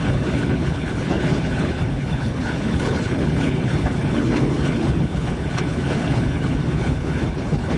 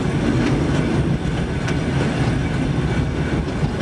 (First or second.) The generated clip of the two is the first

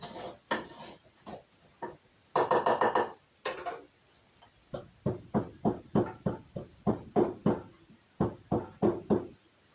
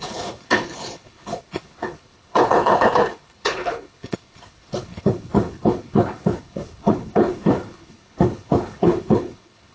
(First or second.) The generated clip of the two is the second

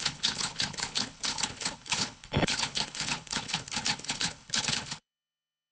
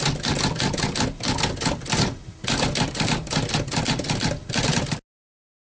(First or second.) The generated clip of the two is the first